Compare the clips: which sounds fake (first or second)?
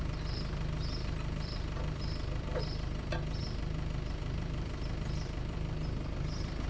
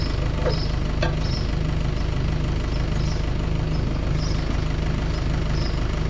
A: first